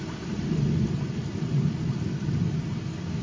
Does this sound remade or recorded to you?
recorded